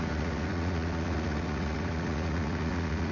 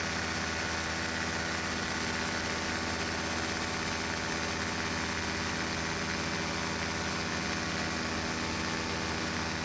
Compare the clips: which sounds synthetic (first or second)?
first